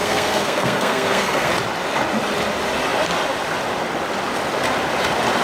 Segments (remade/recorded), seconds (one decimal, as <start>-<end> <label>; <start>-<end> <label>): 0.0-1.5 remade; 1.5-5.4 recorded